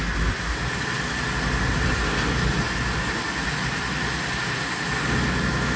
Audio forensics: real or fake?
real